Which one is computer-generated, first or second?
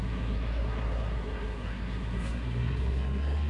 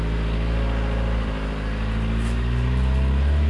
first